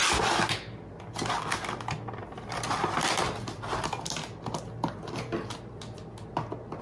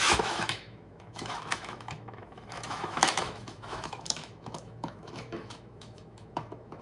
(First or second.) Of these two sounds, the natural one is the first